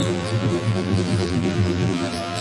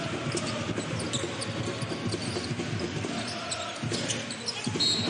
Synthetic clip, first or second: first